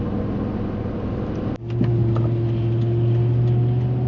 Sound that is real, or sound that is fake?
real